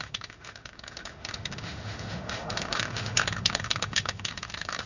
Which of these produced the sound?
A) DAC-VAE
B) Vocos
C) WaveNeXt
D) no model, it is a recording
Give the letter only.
A